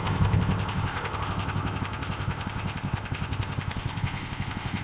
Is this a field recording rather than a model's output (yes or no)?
no